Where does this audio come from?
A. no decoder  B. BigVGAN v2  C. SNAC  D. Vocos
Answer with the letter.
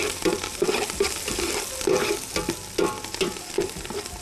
A